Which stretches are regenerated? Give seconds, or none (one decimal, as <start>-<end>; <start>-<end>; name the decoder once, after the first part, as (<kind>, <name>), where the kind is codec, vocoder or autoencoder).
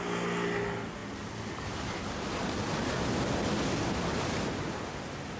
none